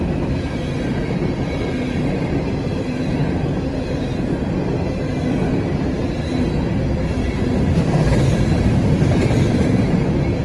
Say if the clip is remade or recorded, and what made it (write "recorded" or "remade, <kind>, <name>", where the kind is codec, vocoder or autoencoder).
recorded